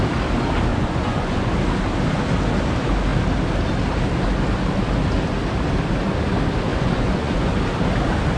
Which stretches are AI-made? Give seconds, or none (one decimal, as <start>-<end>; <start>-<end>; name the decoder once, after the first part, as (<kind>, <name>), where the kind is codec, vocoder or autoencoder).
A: 0.7-1.5 (vocoder, Vocos); 6.7-7.5